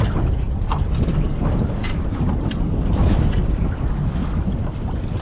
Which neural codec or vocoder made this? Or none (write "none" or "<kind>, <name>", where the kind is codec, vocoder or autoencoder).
none